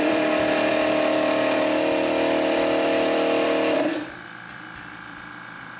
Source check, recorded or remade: remade